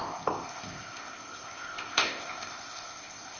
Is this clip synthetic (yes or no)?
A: yes